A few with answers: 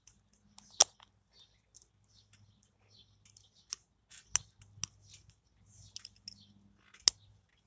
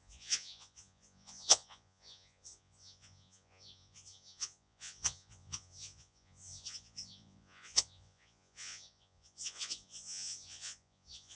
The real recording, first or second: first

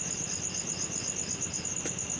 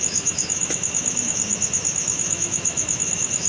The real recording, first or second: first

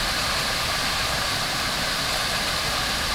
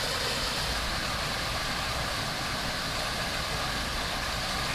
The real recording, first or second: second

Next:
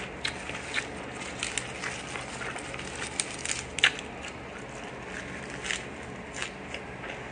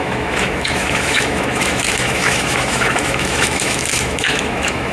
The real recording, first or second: first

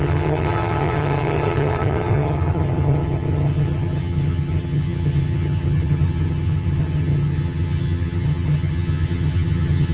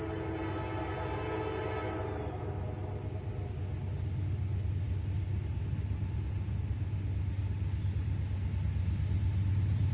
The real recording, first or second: second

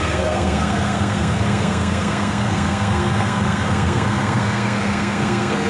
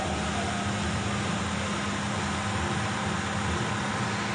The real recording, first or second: second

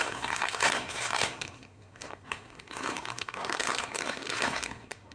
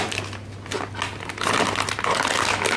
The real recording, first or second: second